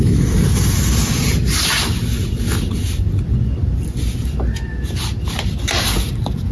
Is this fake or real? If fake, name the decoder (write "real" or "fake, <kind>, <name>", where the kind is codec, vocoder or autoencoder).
real